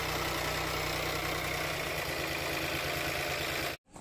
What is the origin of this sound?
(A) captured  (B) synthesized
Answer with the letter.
A